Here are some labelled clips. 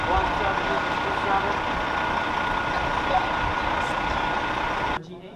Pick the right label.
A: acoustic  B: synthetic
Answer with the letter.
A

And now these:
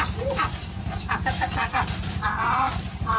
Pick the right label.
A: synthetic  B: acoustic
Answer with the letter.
A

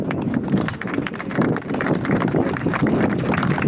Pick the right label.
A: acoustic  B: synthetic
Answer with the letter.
B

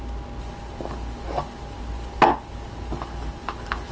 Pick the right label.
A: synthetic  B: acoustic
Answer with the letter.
B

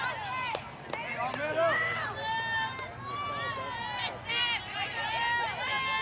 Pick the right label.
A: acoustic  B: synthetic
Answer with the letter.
A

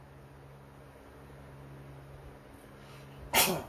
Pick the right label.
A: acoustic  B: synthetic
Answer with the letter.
A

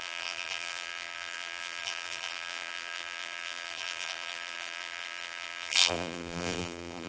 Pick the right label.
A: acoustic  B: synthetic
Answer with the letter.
B